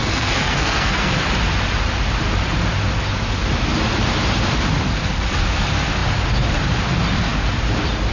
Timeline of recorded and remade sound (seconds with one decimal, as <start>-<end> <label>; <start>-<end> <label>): 0.0-1.1 remade; 1.1-8.1 recorded